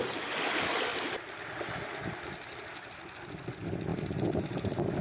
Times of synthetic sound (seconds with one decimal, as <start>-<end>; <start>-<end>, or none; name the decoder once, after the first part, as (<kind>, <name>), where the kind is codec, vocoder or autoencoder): 0.9-2.6 (vocoder, BigVGAN v2); 3.9-5.0